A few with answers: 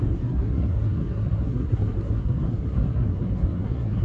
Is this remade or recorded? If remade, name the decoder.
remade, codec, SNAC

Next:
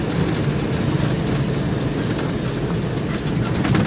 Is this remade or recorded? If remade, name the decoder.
recorded